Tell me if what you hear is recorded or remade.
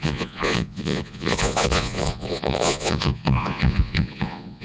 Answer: remade